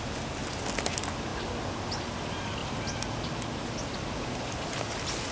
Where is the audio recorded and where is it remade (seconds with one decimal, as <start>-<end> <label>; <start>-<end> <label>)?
0.0-5.3 recorded